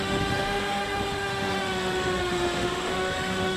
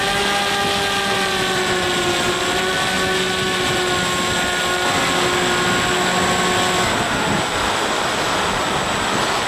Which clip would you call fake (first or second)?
first